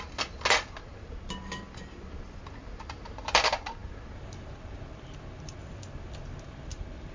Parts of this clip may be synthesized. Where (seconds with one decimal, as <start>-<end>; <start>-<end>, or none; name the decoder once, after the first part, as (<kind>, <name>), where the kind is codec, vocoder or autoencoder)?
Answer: none

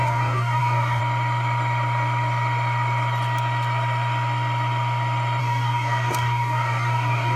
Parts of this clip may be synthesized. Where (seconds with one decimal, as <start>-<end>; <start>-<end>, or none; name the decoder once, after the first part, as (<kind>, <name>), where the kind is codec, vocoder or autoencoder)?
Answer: 0.0-1.0 (codec, DAC); 5.4-7.4